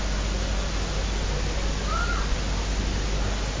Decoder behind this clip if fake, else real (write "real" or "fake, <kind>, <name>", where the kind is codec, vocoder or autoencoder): real